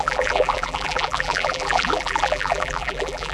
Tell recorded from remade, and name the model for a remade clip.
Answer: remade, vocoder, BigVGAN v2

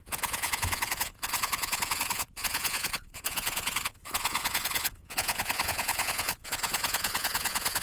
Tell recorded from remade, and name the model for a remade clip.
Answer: remade, vocoder, Vocos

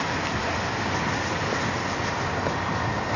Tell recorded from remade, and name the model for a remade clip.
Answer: recorded